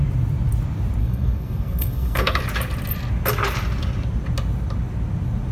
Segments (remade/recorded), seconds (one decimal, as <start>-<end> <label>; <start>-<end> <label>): 0.0-1.0 recorded; 1.0-2.4 remade; 2.4-5.5 recorded